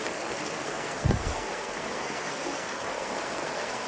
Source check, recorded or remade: remade